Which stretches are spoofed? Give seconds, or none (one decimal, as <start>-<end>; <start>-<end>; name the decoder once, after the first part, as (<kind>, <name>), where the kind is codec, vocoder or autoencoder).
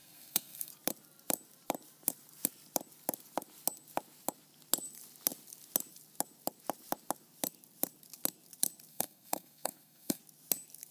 0.0-0.7 (codec, SNAC); 8.9-10.2